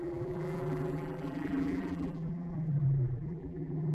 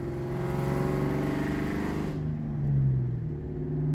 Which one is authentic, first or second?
second